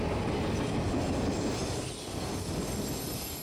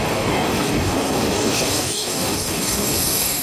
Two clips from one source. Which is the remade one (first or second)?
second